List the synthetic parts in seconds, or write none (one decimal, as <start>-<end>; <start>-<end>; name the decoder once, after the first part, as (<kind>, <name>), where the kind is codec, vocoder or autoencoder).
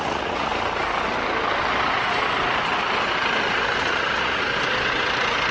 0.0-0.5 (vocoder, Vocos); 3.8-4.5